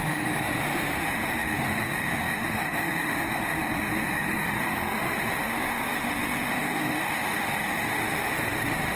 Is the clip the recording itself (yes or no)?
no